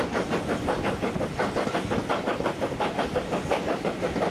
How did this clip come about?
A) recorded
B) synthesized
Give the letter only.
A